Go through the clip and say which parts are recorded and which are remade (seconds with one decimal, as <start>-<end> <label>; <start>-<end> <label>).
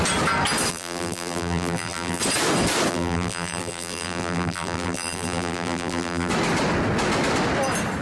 0.0-0.7 recorded; 0.7-2.2 remade; 2.2-2.9 recorded; 2.9-6.3 remade; 6.3-8.0 recorded